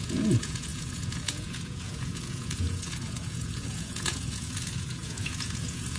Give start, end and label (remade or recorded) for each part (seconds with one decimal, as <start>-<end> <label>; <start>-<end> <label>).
0.0-6.0 remade